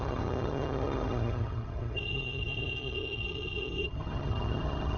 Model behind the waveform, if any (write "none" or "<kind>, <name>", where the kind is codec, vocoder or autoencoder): vocoder, HiFi-GAN